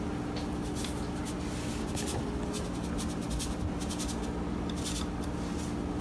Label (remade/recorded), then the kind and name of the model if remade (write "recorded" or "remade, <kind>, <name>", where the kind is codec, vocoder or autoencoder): recorded